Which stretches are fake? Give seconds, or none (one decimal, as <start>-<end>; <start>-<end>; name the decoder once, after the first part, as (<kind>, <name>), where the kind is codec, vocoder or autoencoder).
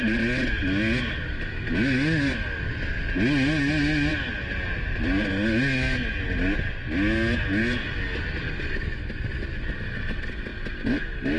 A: none